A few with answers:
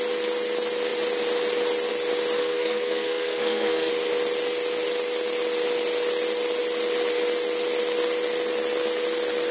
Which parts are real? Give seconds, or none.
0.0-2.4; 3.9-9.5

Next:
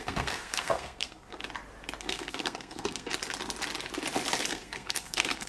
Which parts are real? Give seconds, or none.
1.4-2.0; 3.1-4.5

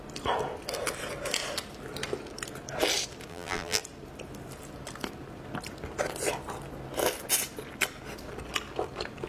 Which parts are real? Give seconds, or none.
0.0-3.3; 3.8-9.3

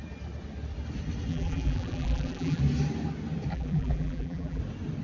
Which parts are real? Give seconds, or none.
0.0-1.3; 2.6-3.5; 4.6-5.0

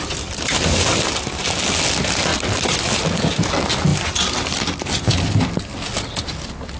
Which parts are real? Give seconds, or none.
0.0-6.8